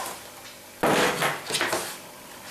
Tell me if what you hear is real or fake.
real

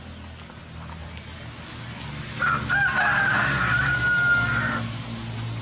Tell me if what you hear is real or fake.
real